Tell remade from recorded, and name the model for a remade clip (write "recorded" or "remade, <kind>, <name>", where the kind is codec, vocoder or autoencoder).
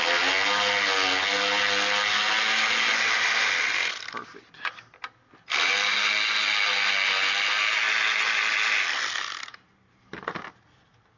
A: recorded